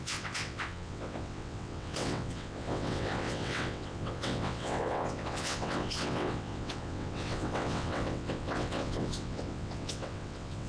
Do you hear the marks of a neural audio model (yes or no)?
yes